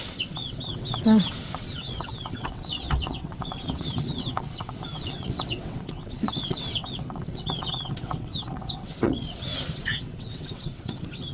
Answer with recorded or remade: remade